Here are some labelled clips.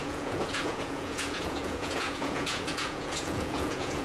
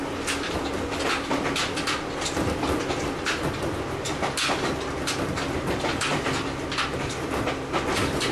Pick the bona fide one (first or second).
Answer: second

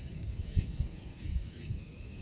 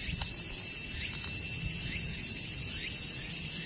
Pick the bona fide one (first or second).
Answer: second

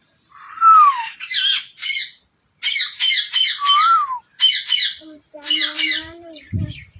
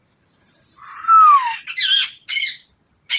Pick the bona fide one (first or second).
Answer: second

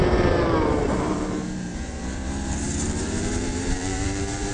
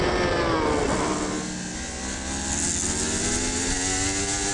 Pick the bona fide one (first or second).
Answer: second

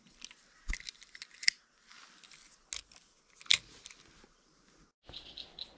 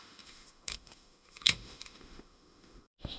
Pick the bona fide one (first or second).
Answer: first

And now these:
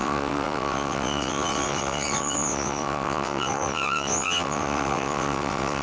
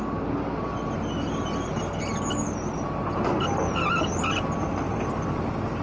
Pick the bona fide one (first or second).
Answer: second